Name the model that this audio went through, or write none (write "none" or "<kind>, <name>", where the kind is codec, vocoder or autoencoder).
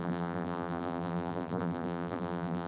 vocoder, BigVGAN v2